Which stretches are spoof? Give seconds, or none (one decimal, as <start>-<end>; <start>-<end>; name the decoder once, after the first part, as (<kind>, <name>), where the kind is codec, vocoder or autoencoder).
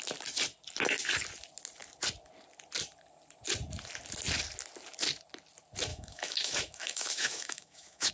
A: 5.9-8.1 (autoencoder, DAC-VAE)